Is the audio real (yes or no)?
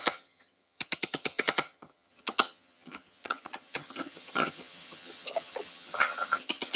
no